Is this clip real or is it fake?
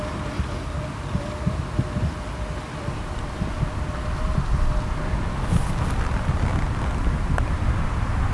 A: real